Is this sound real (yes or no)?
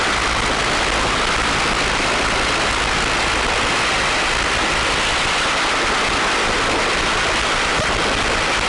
yes